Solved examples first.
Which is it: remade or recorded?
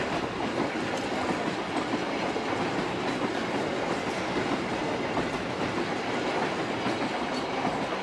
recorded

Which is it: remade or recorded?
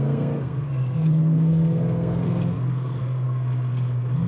remade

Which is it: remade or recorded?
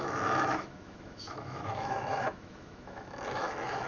remade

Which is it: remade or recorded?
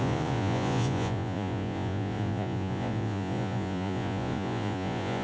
remade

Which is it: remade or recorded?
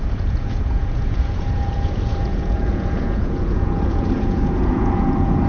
remade